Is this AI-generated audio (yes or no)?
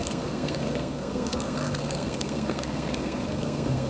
yes